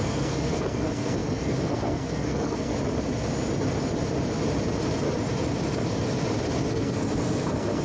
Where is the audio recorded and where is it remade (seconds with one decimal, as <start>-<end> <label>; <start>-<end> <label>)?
0.0-2.7 remade; 2.7-6.7 recorded; 6.7-7.8 remade